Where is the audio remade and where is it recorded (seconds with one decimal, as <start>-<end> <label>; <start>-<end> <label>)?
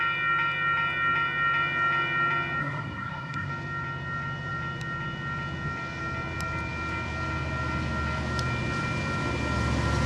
0.0-2.6 recorded; 2.6-3.5 remade; 3.5-10.1 recorded